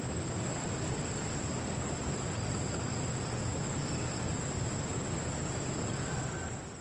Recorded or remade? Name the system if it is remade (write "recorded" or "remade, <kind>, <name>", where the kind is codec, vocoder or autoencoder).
recorded